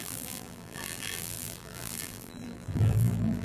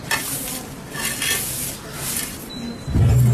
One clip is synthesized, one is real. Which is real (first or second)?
second